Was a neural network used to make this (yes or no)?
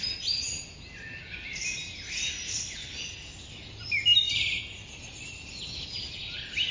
no